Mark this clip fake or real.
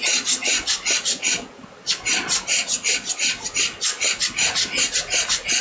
real